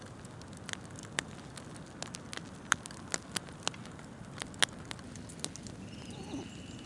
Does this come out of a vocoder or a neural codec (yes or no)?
no